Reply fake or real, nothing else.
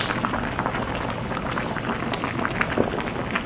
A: real